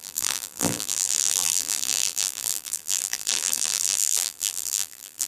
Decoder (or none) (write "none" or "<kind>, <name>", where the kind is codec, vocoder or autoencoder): vocoder, BigVGAN v2